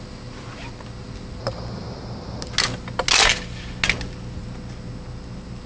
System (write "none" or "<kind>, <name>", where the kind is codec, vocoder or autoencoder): none